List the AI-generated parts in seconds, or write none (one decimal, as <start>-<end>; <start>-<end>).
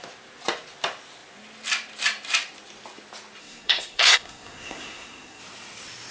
3.4-5.4